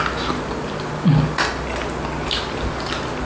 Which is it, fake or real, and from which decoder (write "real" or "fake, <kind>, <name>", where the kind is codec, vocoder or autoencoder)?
real